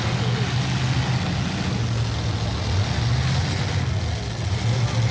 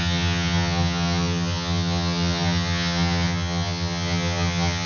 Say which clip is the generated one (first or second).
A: second